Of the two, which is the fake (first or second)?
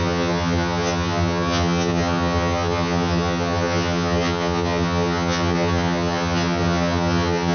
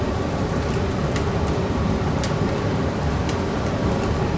first